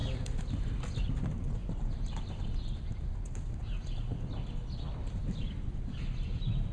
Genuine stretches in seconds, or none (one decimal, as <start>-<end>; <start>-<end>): 0.0-6.7